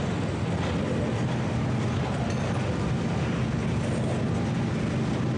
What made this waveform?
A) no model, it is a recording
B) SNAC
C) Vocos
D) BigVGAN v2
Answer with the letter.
A